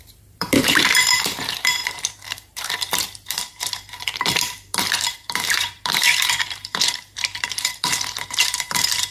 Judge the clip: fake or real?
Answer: fake